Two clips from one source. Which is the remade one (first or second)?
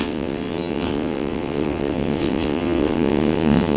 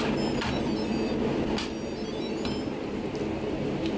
first